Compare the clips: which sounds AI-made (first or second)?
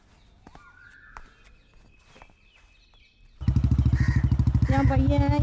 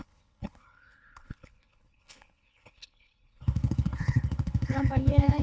second